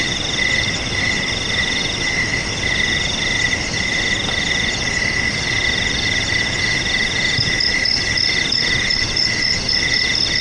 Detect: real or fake real